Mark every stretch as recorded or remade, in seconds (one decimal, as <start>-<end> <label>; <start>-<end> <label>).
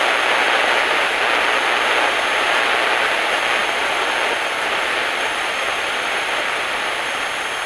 0.0-3.6 recorded; 3.6-7.2 remade; 7.2-7.7 recorded